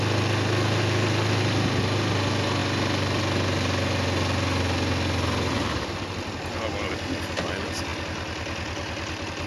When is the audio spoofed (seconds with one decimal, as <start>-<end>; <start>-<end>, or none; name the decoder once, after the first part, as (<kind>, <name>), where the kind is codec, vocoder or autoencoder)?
none